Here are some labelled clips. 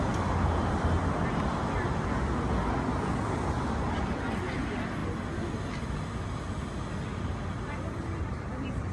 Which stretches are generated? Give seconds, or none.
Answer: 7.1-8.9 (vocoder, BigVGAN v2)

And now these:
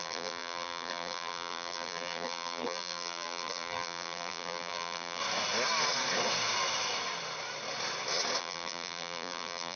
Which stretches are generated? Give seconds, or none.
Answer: 0.0-5.2 (vocoder, BigVGAN v2); 8.4-9.8

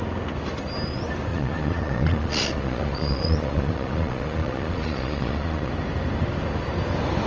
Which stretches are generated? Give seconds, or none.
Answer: 1.3-5.7 (vocoder, Vocos)